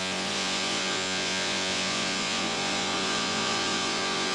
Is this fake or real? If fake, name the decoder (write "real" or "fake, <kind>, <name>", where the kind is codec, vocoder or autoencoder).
fake, vocoder, Vocos